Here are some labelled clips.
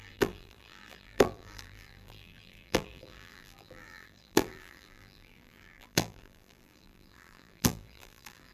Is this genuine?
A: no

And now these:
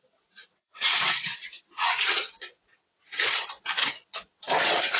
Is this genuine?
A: no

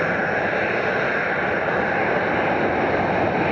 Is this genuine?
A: yes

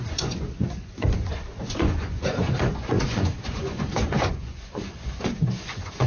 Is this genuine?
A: no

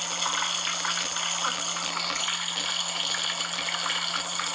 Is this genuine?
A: yes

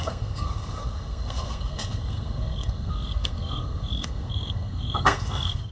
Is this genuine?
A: no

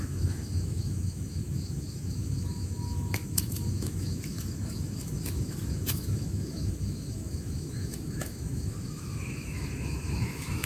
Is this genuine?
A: no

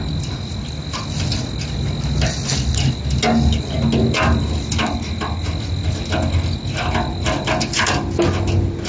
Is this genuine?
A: yes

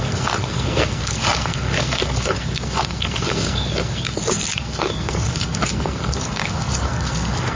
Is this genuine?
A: no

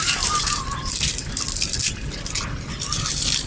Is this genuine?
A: yes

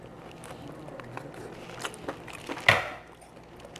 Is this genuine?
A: yes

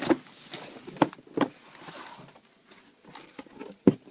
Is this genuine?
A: yes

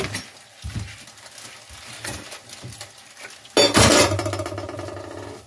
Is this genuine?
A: yes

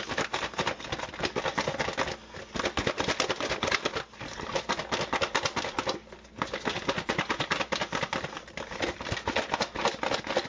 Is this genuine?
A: yes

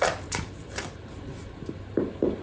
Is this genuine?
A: no